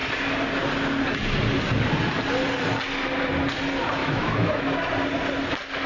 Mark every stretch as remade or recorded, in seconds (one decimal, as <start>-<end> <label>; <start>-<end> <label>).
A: 0.0-4.0 recorded; 4.0-4.8 remade; 4.8-5.9 recorded